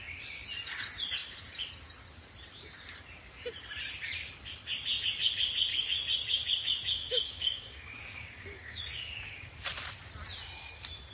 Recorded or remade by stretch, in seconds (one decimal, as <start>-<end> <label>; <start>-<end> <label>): 0.0-5.7 recorded; 5.7-9.5 remade; 9.5-11.1 recorded